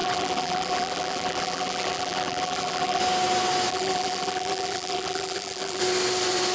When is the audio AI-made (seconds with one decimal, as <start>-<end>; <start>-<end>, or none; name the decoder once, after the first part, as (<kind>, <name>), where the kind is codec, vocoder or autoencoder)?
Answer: 0.0-3.0 (vocoder, BigVGAN v2); 3.7-5.8